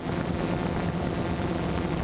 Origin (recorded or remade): recorded